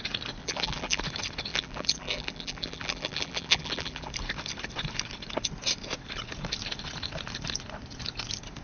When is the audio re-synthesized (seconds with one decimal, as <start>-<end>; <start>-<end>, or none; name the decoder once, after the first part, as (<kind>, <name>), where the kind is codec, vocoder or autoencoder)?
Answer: 0.4-1.0 (vocoder, BigVGAN v2); 1.5-4.1